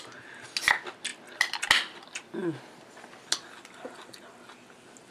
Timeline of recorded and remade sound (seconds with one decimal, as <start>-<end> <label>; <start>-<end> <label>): 0.0-5.1 recorded